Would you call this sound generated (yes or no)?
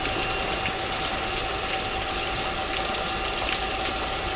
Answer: no